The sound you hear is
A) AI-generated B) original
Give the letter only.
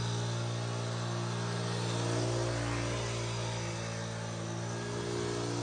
B